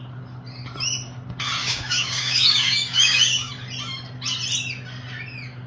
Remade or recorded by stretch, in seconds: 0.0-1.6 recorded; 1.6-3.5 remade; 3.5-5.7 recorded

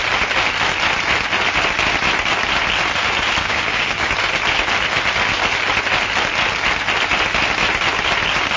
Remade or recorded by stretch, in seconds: 0.0-3.4 recorded; 3.4-4.1 remade; 4.1-8.6 recorded

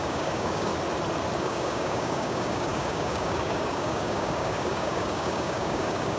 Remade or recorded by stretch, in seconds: 0.0-0.7 remade; 0.7-1.4 recorded; 1.4-6.2 remade

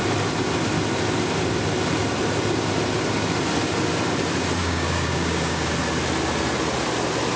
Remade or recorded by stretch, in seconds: 0.0-4.6 recorded; 4.6-5.7 remade; 5.7-7.4 recorded

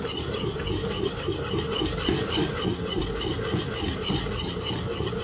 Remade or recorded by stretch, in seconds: 0.0-3.0 recorded; 3.0-3.6 remade; 3.6-5.2 recorded

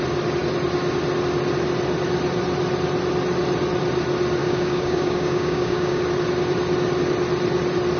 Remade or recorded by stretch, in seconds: 0.0-4.4 recorded; 4.4-6.0 remade; 6.0-8.0 recorded

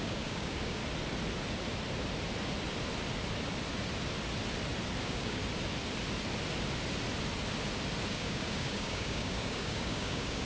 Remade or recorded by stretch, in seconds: 0.0-0.8 remade; 0.8-5.0 recorded; 5.0-5.4 remade; 5.4-8.1 recorded; 8.1-10.5 remade

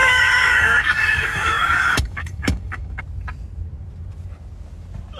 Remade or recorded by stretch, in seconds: 0.0-3.0 remade; 3.0-5.2 recorded